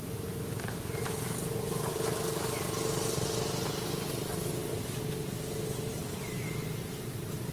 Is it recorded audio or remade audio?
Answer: recorded